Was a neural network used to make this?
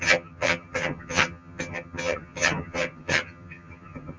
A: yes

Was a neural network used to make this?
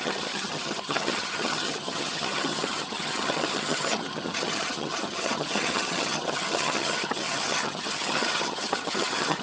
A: yes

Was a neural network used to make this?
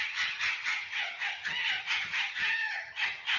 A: yes